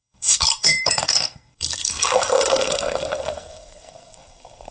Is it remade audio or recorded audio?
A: remade